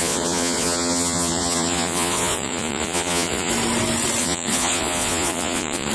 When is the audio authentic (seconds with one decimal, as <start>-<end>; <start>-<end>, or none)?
3.5-4.2